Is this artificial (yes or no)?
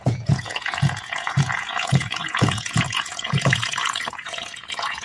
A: yes